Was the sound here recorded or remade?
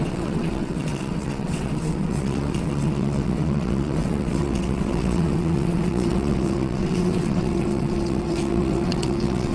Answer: remade